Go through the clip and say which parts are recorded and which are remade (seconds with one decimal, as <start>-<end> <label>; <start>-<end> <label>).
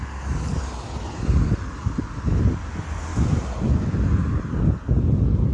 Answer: 0.0-5.5 recorded